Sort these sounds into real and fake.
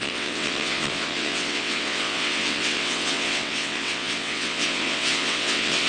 fake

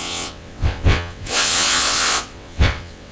fake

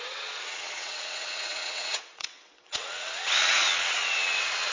fake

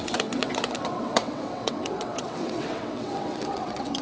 fake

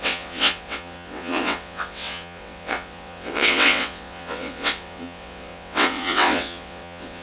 fake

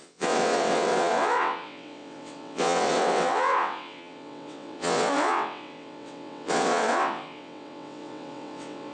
fake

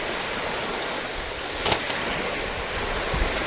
real